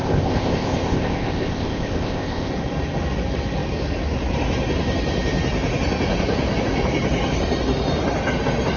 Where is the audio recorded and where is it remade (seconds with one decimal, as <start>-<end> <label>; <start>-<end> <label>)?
0.0-2.5 remade; 2.5-8.8 recorded